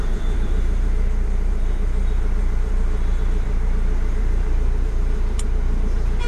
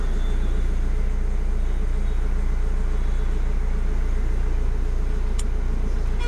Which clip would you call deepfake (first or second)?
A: first